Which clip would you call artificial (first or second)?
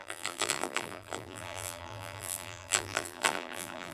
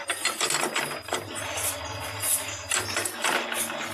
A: first